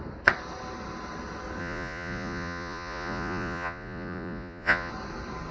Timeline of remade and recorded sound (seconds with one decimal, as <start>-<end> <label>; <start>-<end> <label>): 0.0-1.6 recorded; 1.6-4.9 remade; 4.9-5.5 recorded